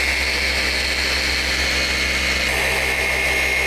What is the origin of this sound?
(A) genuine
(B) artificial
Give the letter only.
A